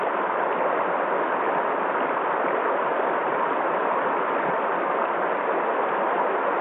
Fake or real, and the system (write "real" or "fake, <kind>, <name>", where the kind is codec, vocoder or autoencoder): real